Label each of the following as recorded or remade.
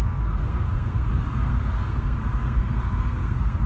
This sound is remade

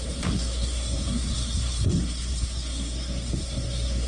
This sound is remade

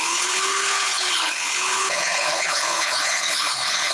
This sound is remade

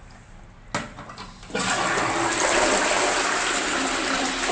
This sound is recorded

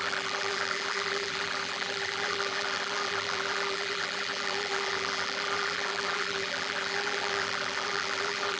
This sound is remade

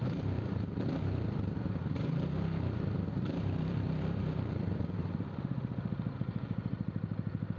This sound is remade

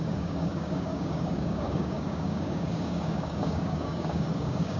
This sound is remade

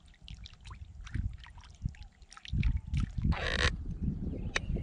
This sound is recorded